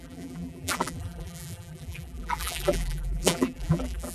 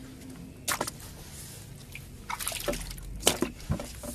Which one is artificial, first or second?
first